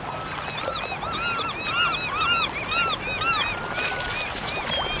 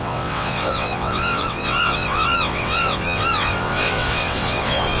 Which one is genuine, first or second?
first